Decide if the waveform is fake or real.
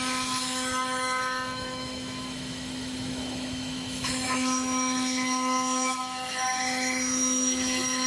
fake